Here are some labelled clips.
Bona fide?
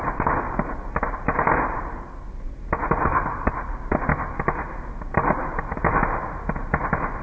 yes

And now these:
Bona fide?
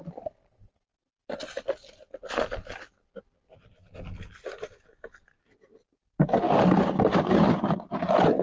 yes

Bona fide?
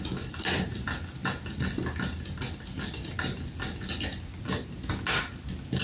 yes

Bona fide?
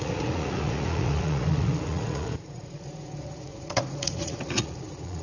no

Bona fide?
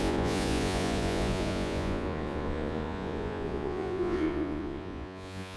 no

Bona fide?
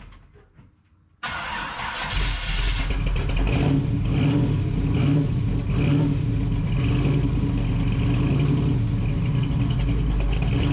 yes